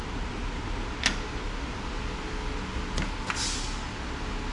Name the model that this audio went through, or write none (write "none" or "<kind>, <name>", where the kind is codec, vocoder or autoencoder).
none